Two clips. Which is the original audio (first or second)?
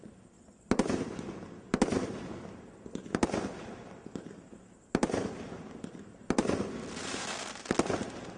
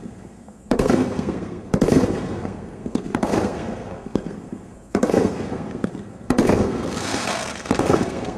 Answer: first